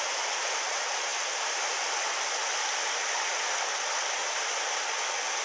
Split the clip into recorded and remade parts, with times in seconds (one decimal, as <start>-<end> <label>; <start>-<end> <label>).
0.0-1.1 remade; 1.1-3.6 recorded; 3.6-4.2 remade; 4.2-5.4 recorded